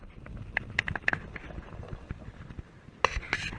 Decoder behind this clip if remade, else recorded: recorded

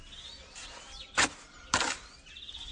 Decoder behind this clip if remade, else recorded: recorded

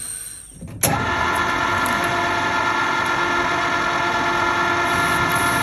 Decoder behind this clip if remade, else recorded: recorded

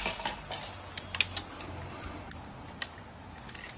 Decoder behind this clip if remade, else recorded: recorded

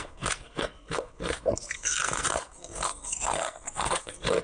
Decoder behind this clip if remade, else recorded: remade, codec, SNAC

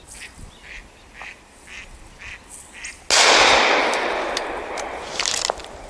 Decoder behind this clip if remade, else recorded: recorded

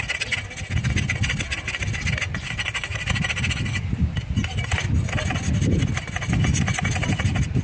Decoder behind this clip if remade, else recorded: recorded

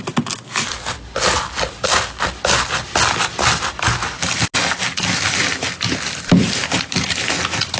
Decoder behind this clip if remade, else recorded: recorded